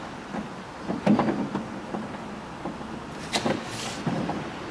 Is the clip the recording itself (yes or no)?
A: yes